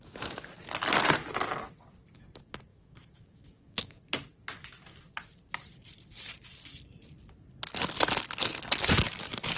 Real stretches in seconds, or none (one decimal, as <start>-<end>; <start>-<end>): 0.0-2.7; 4.0-9.6